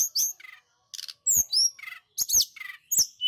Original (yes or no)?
yes